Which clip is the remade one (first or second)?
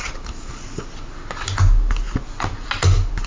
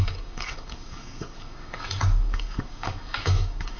second